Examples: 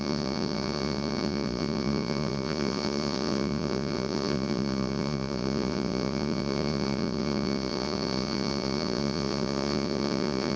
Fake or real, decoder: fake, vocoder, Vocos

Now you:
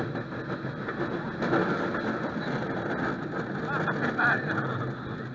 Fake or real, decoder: real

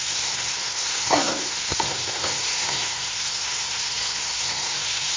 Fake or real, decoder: fake, codec, SNAC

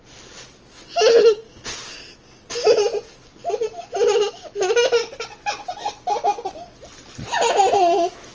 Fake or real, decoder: real